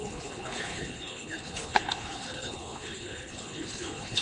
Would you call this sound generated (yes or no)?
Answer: yes